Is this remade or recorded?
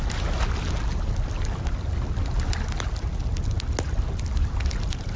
recorded